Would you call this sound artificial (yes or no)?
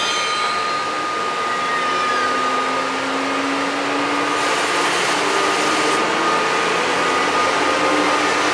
no